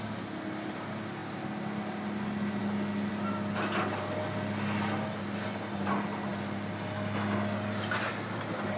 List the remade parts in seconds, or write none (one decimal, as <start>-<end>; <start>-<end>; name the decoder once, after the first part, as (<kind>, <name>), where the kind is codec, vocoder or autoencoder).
none

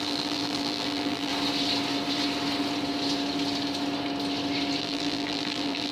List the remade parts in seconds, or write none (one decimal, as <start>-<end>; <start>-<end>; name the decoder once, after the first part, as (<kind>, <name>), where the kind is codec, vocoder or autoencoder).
0.0-1.3 (vocoder, BigVGAN v2); 4.8-5.9